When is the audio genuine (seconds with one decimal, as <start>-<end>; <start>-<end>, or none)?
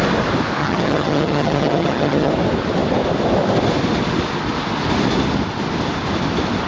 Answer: 0.0-0.6; 2.3-6.7